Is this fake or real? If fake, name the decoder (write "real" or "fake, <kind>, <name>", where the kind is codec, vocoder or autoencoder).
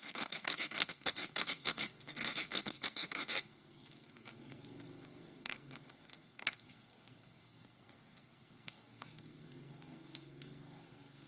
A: fake, codec, SNAC